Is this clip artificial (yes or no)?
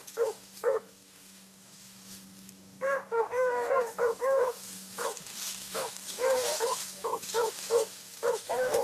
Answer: yes